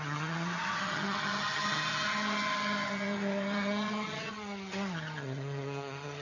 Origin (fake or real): fake